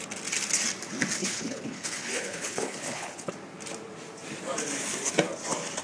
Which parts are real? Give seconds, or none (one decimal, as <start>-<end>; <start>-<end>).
0.0-1.2; 3.3-5.8